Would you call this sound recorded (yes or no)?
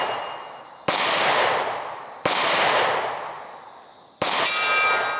yes